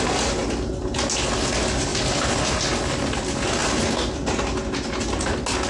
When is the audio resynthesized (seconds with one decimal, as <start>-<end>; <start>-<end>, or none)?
1.9-2.5; 3.6-4.2